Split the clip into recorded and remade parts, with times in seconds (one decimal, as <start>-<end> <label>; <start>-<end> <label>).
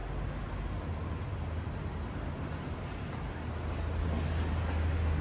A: 0.0-5.2 recorded